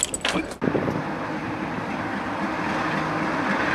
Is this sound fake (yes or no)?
no